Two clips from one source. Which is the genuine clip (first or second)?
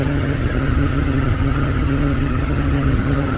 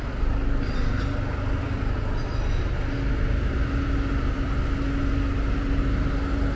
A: second